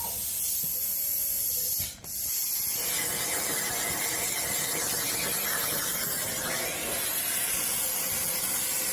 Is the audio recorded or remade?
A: recorded